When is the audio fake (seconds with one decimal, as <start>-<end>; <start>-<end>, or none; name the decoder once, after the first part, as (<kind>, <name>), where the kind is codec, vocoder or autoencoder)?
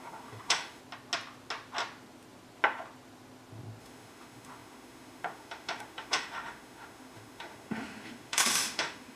0.0-0.8 (autoencoder, DAC-VAE); 3.8-9.2